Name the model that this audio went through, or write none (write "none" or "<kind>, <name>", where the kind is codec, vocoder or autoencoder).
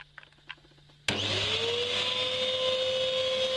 none